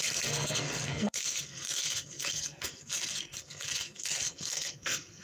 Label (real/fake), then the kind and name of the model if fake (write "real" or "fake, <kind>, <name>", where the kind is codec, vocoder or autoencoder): fake, codec, SNAC